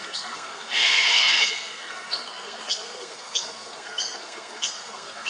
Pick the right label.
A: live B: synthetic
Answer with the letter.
B